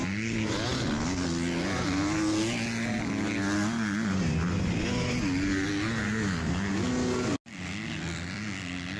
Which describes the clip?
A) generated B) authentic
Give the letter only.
B